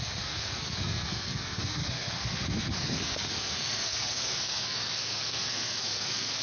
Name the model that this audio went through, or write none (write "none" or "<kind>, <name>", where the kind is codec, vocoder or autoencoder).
codec, SNAC